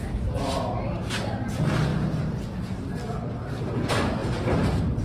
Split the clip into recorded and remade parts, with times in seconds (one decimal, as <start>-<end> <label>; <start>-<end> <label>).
0.0-0.9 recorded; 0.9-1.5 remade; 1.5-4.2 recorded; 4.2-5.0 remade